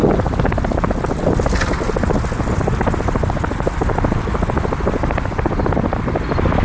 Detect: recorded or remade recorded